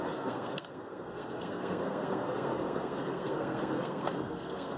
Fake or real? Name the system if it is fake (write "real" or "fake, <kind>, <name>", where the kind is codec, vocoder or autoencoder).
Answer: fake, codec, SNAC